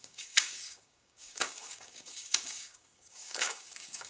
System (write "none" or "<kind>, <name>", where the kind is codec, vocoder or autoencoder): codec, DAC